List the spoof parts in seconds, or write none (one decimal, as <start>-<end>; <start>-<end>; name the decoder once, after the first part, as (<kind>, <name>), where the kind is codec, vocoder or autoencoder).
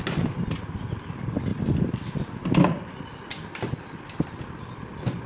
none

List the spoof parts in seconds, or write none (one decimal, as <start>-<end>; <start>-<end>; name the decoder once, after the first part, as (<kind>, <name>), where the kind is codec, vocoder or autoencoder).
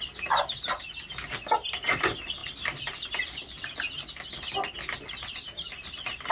none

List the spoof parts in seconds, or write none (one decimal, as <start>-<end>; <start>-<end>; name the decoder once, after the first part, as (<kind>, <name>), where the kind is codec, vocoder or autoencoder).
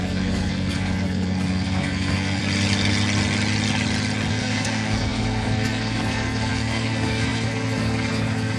0.0-2.4 (codec, SNAC); 4.3-8.6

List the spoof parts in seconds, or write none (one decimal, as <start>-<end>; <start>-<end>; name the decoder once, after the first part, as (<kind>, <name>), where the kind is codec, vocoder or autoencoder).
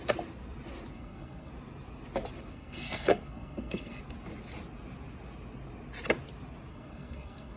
0.9-1.5 (codec, SNAC); 2.5-4.0; 6.7-7.6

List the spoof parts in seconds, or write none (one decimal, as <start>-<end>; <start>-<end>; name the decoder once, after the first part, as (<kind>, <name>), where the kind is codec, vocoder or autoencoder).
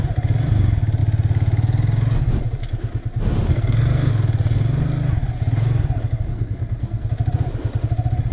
3.5-4.1 (codec, SNAC); 6.3-7.1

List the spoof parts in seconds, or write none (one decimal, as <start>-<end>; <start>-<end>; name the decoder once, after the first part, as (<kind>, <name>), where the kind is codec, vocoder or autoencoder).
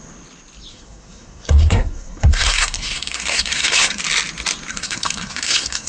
0.7-4.0 (codec, SNAC); 4.7-5.9